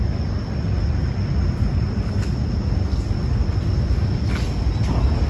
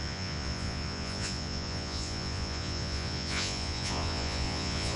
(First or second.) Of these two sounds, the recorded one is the first